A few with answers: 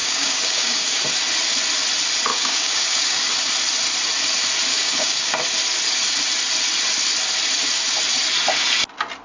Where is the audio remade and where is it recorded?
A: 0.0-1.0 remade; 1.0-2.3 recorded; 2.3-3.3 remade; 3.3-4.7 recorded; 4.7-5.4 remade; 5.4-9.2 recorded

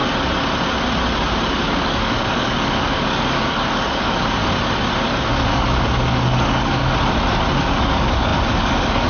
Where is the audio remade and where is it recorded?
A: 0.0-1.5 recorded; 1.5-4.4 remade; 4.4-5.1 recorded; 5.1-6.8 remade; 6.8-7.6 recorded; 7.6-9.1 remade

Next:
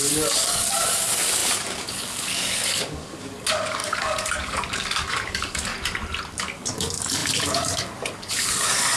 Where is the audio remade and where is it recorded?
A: 0.0-5.7 remade; 5.7-6.3 recorded; 6.3-9.0 remade